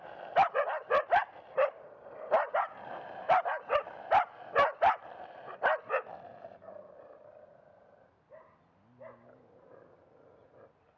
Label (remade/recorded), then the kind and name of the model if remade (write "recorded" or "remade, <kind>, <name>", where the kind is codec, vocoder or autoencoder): recorded